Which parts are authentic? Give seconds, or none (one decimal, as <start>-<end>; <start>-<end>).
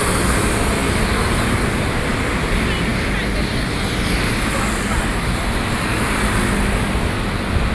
0.0-7.7